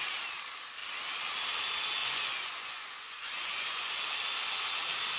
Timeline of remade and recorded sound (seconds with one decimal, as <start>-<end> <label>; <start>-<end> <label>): 0.0-2.0 recorded; 2.0-3.9 remade; 3.9-5.2 recorded